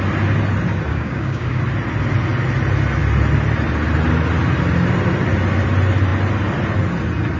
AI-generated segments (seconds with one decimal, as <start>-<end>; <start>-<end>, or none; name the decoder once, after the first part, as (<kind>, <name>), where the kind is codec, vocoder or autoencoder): 0.9-1.6 (codec, DAC)